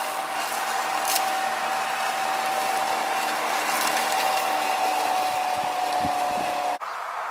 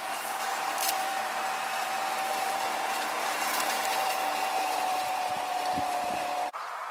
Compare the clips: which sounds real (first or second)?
first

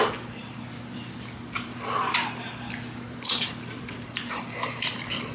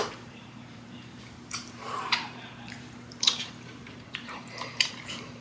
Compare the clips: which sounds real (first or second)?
first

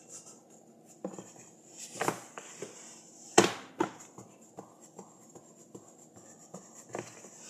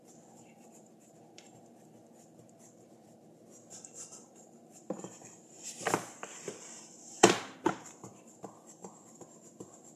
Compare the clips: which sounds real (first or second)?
first